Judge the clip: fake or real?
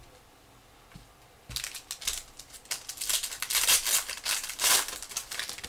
real